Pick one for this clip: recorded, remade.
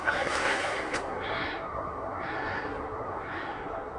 remade